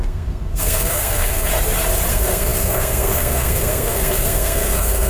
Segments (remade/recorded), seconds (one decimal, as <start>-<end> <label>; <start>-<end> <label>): 0.0-1.5 remade; 1.5-2.1 recorded; 2.1-5.1 remade